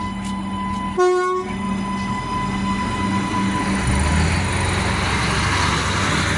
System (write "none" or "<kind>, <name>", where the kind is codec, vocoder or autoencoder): none